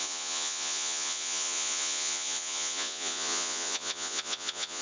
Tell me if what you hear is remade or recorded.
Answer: remade